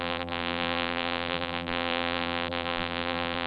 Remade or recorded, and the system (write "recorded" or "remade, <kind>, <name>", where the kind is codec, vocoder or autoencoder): remade, vocoder, BigVGAN v2